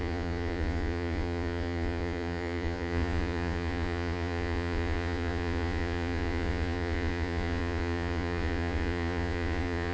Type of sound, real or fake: fake